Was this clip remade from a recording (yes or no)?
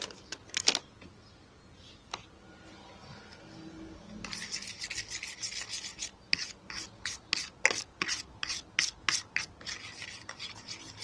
no